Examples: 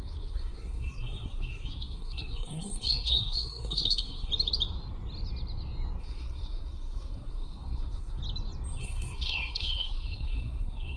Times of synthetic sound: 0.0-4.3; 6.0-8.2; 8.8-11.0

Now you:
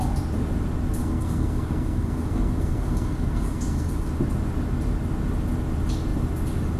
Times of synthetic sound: 1.0-4.1

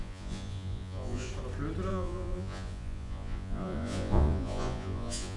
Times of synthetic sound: 0.0-1.3; 1.9-5.4

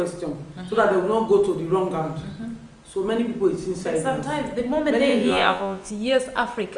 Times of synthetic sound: 5.1-5.9

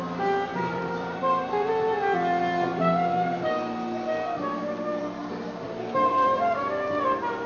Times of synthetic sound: 0.5-1.7; 6.1-6.6